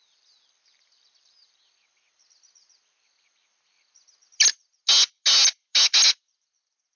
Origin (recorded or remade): recorded